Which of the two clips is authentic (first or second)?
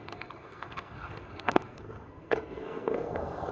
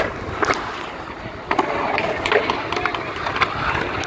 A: second